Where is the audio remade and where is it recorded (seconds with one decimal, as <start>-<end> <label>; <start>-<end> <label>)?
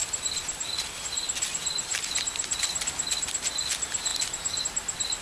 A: 0.0-0.7 remade; 0.7-4.1 recorded; 4.1-4.6 remade; 4.6-5.2 recorded